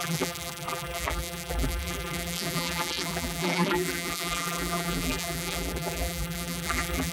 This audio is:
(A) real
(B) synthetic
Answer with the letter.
B